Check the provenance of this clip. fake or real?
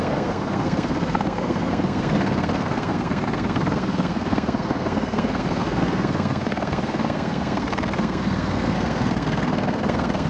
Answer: fake